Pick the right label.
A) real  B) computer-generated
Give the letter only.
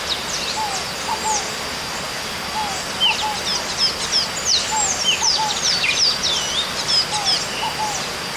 A